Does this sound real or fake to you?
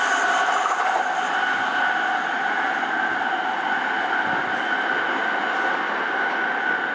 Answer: real